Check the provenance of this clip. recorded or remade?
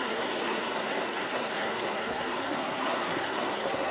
remade